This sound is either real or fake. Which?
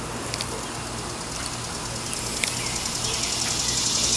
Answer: real